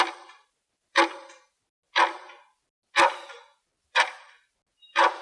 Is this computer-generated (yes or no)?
no